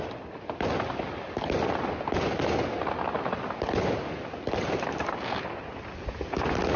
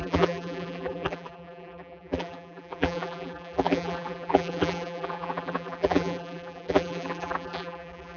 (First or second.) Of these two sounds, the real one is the first